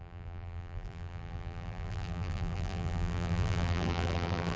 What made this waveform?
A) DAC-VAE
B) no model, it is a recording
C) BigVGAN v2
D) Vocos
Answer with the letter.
C